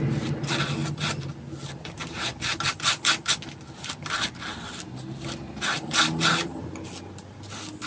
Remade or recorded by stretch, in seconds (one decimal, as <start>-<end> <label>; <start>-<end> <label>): 0.0-7.9 recorded